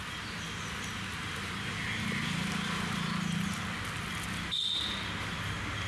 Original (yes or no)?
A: yes